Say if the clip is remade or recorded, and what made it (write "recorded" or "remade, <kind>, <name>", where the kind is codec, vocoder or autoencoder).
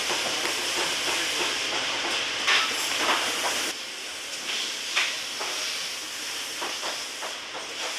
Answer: recorded